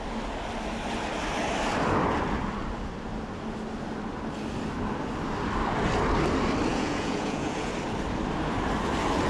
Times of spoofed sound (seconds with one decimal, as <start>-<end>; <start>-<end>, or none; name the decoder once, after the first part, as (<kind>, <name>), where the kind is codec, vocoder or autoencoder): 6.7-7.7 (vocoder, Vocos)